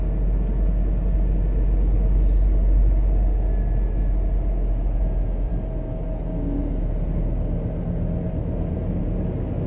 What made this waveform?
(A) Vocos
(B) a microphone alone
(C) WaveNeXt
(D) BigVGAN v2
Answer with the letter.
B